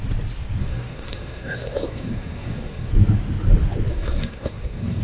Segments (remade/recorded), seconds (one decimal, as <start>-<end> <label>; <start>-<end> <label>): 0.0-0.6 recorded; 0.6-2.9 remade; 2.9-3.9 recorded; 3.9-5.0 remade